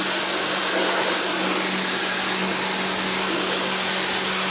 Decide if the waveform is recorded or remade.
recorded